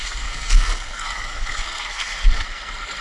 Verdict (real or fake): fake